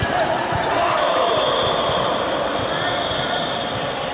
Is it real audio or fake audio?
real